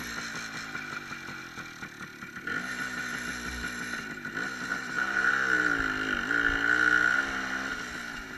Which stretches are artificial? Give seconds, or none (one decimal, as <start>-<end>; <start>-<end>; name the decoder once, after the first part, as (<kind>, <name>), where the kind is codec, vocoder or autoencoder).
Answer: 4.7-5.3 (vocoder, BigVGAN v2)